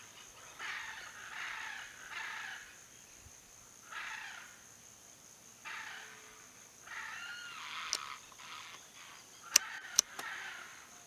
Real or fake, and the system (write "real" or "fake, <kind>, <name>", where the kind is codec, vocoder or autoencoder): real